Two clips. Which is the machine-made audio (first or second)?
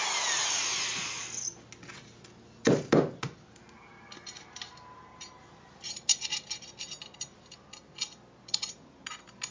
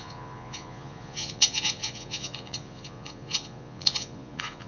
second